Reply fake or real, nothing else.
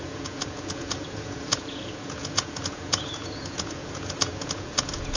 fake